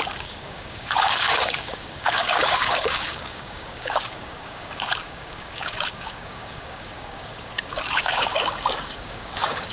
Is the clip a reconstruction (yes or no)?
yes